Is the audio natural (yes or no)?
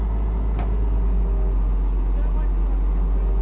yes